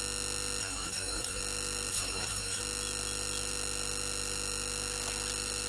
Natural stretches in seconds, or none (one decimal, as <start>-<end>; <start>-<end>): 0.0-0.6; 1.4-1.9; 2.6-5.7